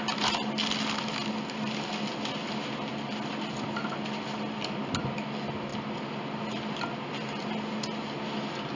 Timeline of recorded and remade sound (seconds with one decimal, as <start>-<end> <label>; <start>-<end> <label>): 0.0-8.8 recorded